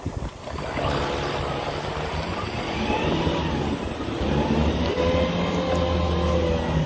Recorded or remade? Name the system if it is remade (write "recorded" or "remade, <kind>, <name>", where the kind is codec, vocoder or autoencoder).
recorded